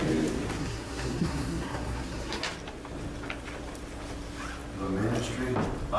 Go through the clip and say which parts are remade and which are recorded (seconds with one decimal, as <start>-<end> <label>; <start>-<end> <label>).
0.0-0.6 recorded; 0.6-2.4 remade; 2.4-6.0 recorded